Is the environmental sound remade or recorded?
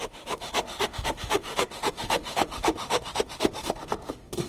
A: remade